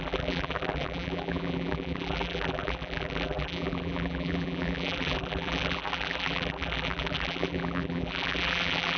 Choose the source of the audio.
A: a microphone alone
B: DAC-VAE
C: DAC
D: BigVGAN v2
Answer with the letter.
D